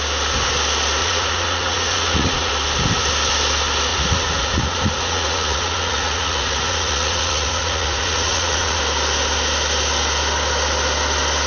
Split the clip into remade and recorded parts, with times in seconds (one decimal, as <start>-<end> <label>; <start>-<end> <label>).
0.0-1.0 recorded; 1.0-2.5 remade; 2.5-3.9 recorded; 3.9-8.8 remade; 8.8-11.5 recorded